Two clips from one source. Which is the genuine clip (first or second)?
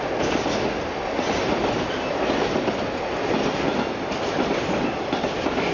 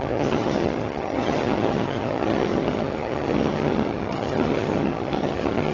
first